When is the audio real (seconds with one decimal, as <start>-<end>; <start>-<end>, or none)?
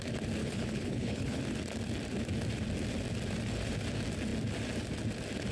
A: 0.0-0.4; 1.4-5.5